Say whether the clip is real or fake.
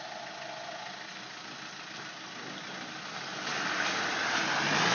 real